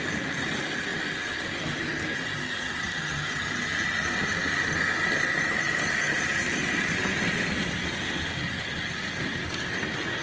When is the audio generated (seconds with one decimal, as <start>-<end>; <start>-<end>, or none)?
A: none